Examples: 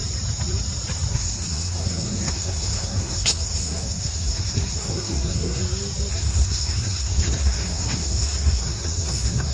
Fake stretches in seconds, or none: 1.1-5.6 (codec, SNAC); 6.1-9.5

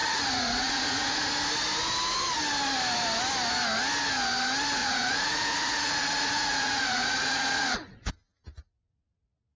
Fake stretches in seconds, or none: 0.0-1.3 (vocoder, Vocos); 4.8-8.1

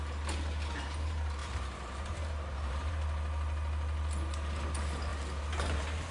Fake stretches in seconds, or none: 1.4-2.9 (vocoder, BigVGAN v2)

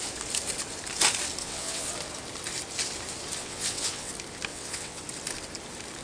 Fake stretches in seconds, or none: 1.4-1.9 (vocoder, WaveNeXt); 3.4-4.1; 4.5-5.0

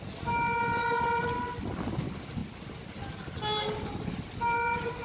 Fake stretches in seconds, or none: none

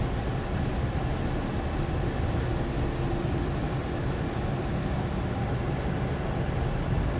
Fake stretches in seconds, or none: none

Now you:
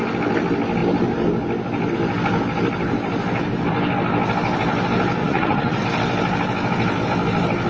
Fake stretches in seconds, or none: 5.2-5.8 (vocoder, Vocos)

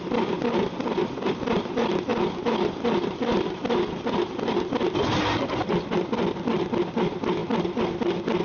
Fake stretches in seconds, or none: none